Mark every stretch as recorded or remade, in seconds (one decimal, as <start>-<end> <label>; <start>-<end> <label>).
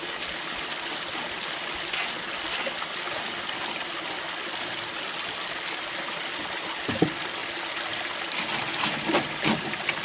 0.0-10.0 recorded